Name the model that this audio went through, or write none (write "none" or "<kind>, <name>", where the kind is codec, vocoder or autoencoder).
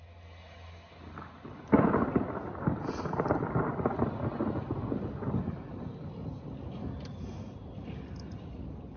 none